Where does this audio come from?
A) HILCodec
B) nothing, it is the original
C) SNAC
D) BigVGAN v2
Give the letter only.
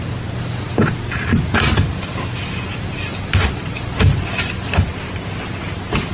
B